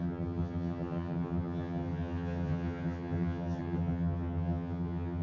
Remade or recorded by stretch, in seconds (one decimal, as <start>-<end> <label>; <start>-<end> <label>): 0.0-5.2 remade